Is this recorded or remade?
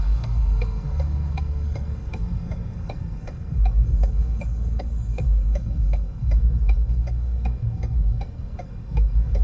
remade